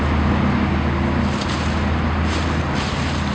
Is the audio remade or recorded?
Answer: recorded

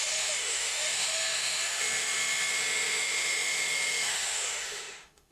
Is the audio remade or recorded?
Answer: remade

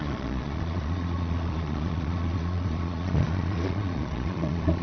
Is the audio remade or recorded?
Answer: remade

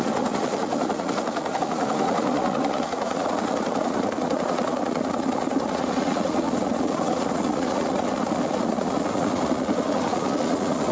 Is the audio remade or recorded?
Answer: remade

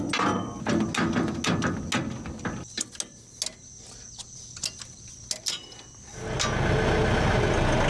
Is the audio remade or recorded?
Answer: recorded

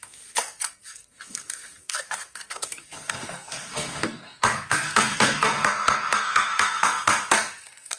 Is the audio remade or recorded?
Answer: remade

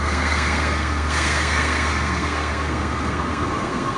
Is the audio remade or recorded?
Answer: remade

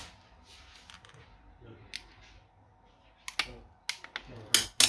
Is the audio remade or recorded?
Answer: recorded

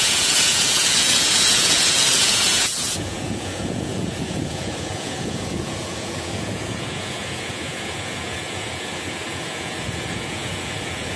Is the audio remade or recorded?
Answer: remade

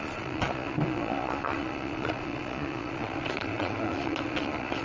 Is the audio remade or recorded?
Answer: remade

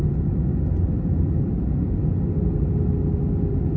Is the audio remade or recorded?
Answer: recorded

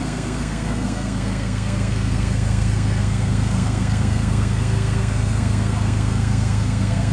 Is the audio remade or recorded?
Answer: remade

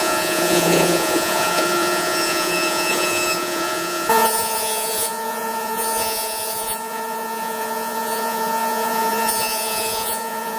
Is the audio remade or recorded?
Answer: remade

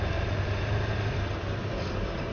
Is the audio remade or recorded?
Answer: remade